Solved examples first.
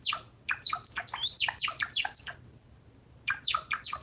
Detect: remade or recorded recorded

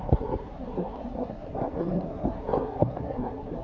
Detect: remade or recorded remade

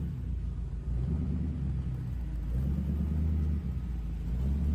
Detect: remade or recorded recorded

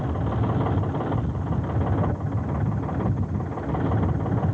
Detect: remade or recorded recorded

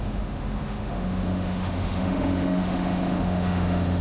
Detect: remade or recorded remade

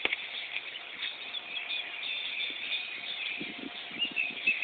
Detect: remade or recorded recorded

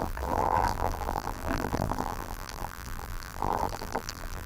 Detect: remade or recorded remade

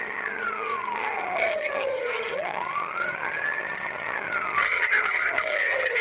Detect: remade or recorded remade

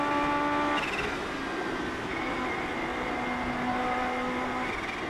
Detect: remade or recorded recorded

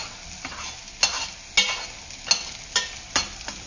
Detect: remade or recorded recorded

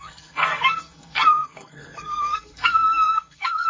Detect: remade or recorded remade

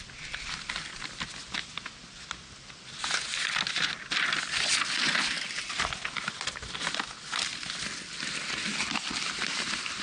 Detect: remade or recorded recorded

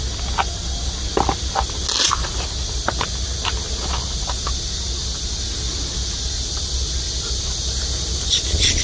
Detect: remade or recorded recorded